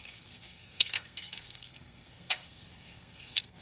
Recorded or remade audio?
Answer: remade